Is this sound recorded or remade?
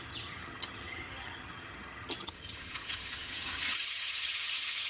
remade